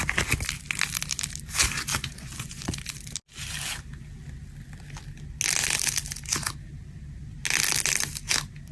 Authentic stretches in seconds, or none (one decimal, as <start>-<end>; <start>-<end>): 0.0-1.9; 2.8-8.7